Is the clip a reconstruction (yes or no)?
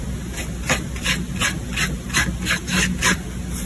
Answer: no